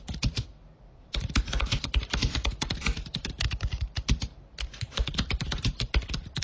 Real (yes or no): no